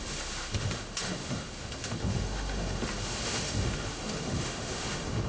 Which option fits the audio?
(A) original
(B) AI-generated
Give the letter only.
B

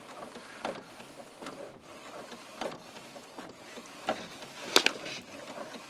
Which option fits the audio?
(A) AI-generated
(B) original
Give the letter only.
B